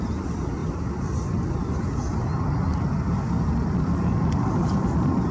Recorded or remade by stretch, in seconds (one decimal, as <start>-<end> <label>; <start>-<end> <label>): 0.0-5.3 recorded